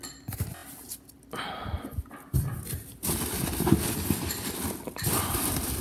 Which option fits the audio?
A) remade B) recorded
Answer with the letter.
B